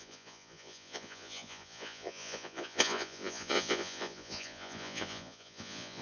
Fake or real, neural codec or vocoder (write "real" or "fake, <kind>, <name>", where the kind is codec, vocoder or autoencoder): fake, vocoder, Vocos